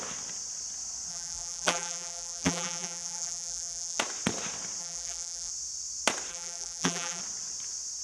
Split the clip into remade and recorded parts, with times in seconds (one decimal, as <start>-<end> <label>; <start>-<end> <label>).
0.0-1.1 recorded; 1.1-4.0 remade; 4.0-4.8 recorded; 4.8-5.5 remade; 5.5-6.3 recorded; 6.3-7.2 remade; 7.2-8.0 recorded